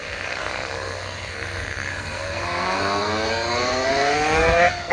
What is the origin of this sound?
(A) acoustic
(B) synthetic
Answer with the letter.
B